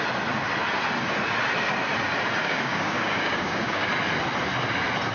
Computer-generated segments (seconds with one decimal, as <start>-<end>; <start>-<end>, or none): 2.4-3.9